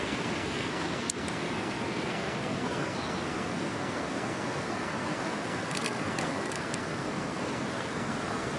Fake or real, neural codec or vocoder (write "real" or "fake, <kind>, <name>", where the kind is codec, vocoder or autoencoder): fake, codec, SNAC